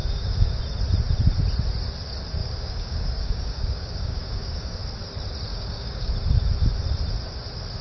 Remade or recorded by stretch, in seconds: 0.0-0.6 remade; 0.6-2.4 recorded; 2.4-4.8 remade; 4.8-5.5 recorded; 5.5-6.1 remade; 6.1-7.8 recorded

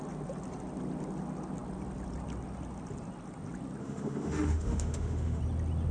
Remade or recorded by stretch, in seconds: 0.0-3.8 recorded; 3.8-5.4 remade; 5.4-5.9 recorded